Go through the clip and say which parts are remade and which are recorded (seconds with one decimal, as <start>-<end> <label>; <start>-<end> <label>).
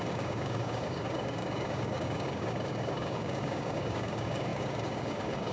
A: 0.0-5.5 remade